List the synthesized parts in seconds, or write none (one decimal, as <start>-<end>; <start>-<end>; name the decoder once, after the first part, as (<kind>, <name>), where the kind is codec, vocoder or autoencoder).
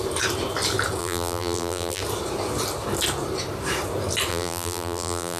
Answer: 1.0-2.0 (vocoder, BigVGAN v2); 4.3-5.4